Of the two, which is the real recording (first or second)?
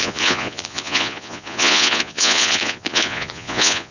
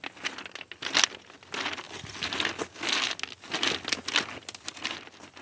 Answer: second